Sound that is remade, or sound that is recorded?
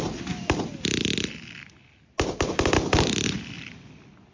recorded